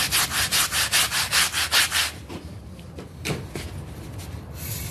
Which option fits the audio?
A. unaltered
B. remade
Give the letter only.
A